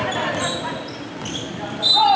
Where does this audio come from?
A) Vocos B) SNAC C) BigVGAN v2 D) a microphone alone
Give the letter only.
D